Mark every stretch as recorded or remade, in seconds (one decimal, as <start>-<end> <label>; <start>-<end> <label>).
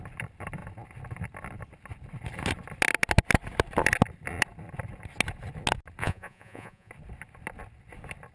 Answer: 0.0-6.0 recorded; 6.0-6.9 remade; 6.9-8.3 recorded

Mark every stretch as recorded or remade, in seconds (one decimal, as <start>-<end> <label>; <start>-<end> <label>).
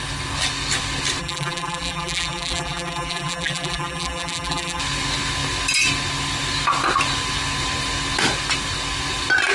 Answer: 0.0-1.2 recorded; 1.2-4.8 remade; 4.8-9.5 recorded